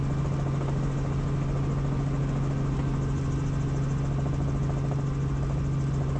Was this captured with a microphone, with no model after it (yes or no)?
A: yes